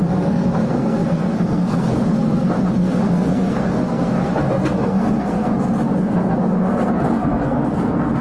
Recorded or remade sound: remade